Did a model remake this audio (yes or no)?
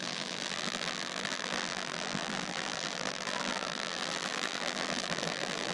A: yes